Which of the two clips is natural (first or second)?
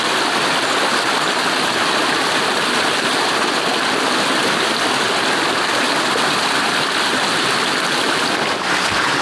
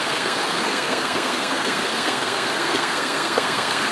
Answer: first